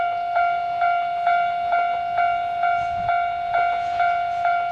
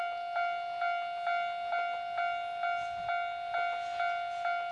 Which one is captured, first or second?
second